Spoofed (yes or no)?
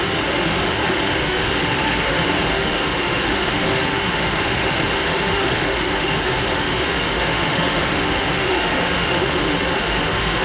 yes